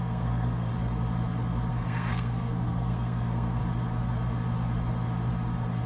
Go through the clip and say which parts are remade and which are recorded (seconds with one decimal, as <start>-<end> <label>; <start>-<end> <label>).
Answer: 0.0-0.7 remade; 0.7-1.7 recorded; 1.7-3.6 remade; 3.6-5.9 recorded